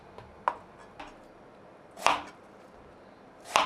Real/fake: real